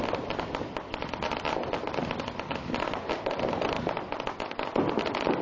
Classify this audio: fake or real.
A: real